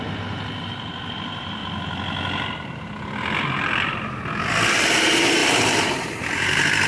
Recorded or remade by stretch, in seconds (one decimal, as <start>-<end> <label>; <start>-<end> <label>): 0.0-1.6 remade; 1.6-4.7 recorded; 4.7-6.9 remade